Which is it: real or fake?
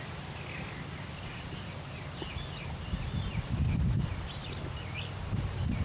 real